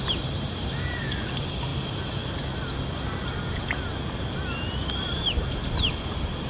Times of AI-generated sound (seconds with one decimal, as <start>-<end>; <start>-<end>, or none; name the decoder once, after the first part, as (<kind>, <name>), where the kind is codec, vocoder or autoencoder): 0.0-1.7 (vocoder, BigVGAN v2); 4.9-6.5